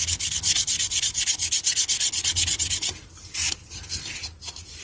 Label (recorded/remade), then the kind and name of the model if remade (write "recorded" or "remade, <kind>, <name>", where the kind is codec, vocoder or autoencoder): recorded